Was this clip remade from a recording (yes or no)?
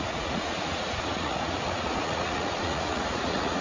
yes